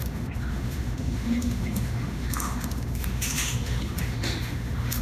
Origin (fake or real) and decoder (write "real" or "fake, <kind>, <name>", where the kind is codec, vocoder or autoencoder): fake, autoencoder, DAC-VAE